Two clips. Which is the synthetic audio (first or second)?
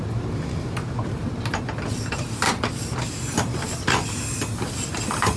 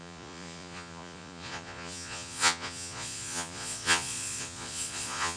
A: second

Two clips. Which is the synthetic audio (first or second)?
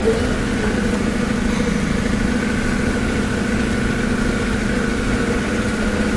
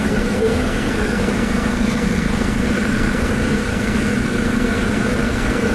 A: second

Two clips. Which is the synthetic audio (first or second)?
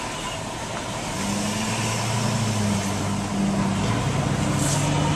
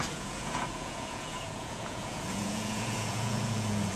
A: second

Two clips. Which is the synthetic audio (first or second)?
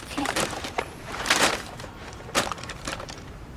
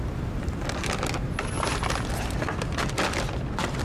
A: first